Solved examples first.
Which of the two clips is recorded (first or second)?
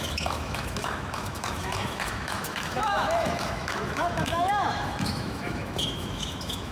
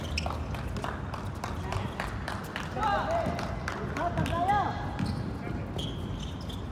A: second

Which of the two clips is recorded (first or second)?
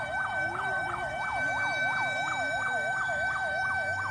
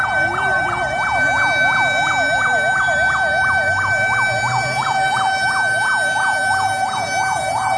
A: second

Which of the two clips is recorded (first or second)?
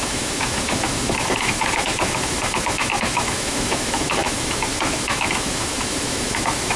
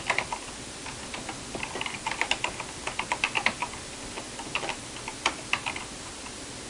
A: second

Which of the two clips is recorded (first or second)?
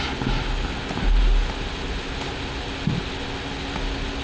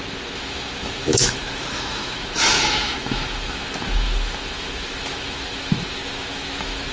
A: first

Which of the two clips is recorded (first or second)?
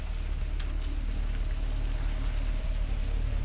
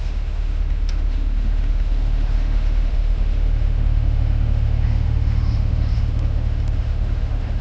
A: first